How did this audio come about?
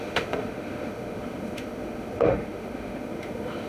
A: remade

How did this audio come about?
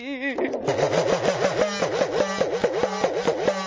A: recorded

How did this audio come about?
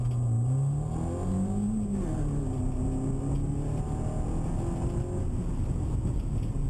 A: recorded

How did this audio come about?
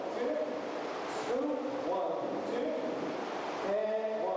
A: recorded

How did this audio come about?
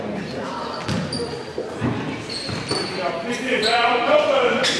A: remade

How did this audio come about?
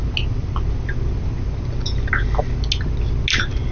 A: recorded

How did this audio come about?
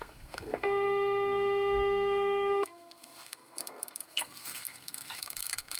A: remade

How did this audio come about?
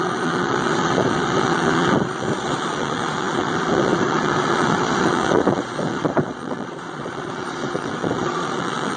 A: remade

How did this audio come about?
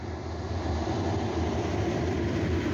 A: recorded